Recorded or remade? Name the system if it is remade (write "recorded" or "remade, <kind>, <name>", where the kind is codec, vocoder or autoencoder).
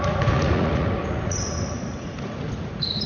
remade, vocoder, Vocos